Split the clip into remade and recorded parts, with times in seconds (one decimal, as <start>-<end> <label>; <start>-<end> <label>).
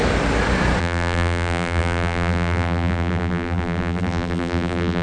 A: 0.0-0.8 recorded; 0.8-5.0 remade